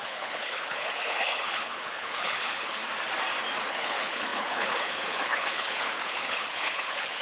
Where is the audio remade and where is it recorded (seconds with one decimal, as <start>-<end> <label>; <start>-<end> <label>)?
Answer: 0.0-2.8 remade; 2.8-3.7 recorded; 3.7-7.2 remade